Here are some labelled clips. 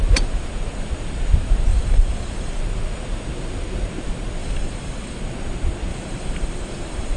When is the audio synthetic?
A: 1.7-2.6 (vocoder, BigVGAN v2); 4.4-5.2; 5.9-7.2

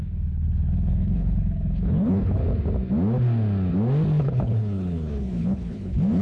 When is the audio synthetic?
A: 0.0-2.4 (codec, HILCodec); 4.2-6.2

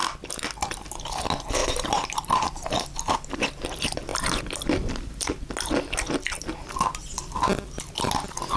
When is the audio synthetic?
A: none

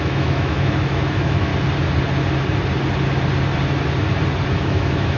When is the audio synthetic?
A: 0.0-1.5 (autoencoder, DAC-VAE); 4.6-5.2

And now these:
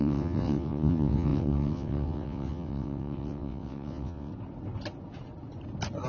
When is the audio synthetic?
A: 0.0-4.3 (vocoder, WaveNeXt)